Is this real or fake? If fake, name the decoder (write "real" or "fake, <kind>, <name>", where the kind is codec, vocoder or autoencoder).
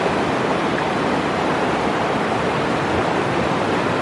real